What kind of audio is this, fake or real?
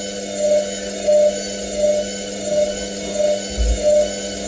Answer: real